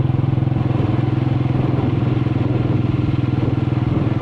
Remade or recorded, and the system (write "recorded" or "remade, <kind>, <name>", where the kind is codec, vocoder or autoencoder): recorded